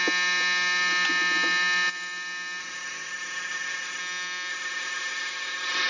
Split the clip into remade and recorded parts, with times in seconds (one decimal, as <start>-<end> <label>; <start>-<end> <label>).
0.0-2.6 recorded; 2.6-4.0 remade; 4.0-4.5 recorded; 4.5-5.9 remade